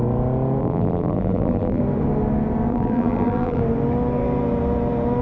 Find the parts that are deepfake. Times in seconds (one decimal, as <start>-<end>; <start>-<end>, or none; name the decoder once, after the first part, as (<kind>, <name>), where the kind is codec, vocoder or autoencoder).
0.6-1.8 (vocoder, BigVGAN v2); 2.7-3.6